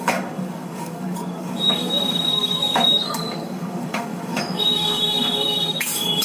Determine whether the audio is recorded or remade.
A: remade